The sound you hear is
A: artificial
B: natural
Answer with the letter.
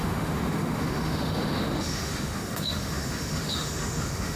A